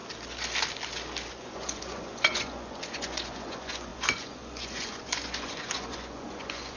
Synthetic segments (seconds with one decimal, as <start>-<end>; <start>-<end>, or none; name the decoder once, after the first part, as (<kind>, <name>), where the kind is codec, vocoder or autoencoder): 1.3-6.8 (vocoder, Vocos)